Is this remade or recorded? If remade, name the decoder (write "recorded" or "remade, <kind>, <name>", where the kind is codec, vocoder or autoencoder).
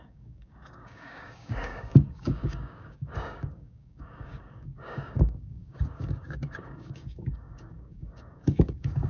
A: remade, codec, DAC